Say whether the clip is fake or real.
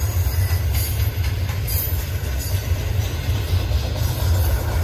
real